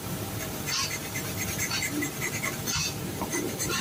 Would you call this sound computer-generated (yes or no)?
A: yes